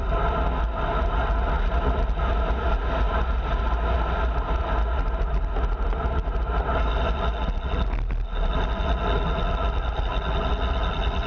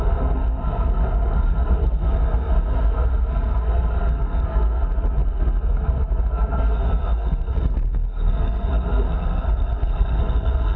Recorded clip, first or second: first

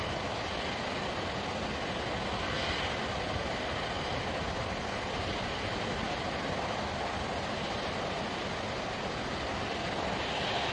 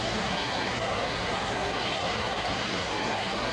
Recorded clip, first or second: first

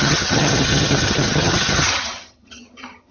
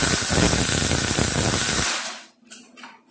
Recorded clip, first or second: second